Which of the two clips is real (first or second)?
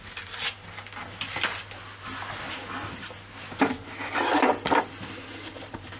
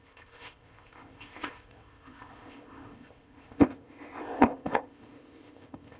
first